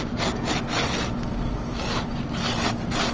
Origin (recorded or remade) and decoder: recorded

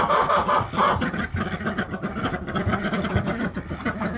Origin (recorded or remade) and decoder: remade, vocoder, BigVGAN v2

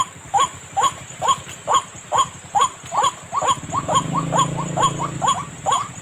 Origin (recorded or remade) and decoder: remade, vocoder, BigVGAN v2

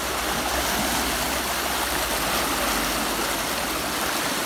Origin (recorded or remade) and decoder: recorded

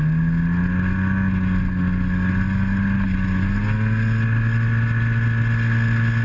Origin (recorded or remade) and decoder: recorded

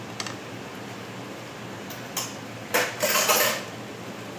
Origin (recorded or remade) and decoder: recorded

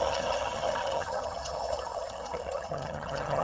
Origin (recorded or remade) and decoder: remade, vocoder, HiFi-GAN